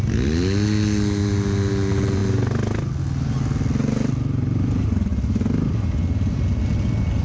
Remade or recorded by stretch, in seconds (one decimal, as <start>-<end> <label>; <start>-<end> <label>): 0.0-7.2 recorded